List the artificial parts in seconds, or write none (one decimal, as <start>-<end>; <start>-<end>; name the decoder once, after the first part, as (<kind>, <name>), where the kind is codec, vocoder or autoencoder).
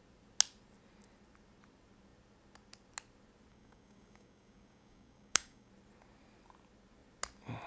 3.5-5.7 (codec, DAC)